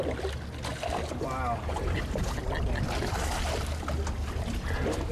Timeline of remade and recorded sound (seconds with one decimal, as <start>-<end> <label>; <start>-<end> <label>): 0.0-5.1 recorded